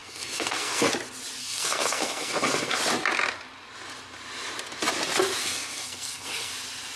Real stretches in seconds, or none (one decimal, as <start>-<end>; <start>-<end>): 0.9-1.4; 2.8-5.4; 6.5-7.0